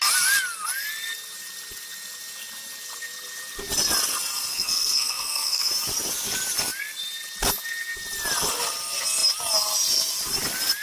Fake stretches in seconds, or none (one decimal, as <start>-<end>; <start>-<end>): 4.5-5.7